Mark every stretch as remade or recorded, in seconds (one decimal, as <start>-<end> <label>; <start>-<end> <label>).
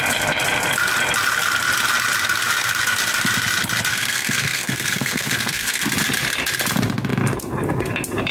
0.0-3.9 recorded; 3.9-5.9 remade; 5.9-8.3 recorded